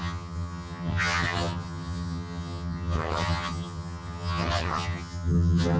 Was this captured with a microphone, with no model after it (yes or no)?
no